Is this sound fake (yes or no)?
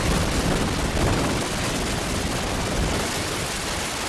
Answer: no